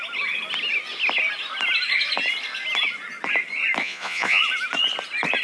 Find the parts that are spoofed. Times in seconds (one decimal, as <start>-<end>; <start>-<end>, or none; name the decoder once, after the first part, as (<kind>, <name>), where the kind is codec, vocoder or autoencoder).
3.8-4.4 (vocoder, Vocos)